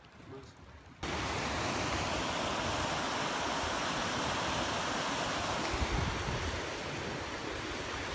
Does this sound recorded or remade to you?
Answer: recorded